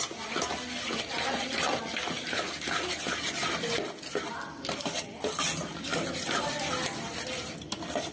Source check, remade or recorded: recorded